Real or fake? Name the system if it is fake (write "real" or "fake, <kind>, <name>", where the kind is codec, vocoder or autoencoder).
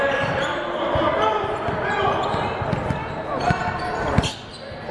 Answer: real